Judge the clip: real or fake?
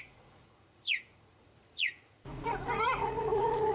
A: fake